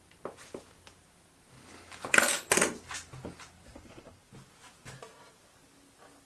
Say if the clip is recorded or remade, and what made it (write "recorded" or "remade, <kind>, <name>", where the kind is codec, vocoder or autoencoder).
recorded